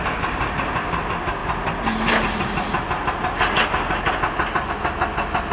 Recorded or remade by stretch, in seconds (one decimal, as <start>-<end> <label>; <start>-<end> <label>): 0.0-5.5 recorded